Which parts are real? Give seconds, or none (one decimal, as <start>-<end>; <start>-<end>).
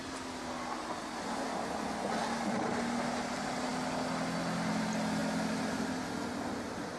0.0-7.0